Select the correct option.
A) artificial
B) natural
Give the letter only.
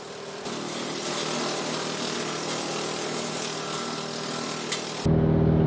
B